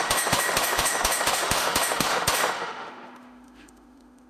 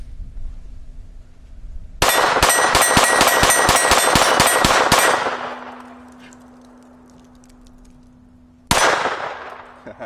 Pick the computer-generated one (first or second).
first